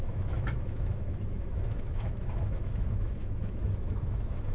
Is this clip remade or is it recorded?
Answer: remade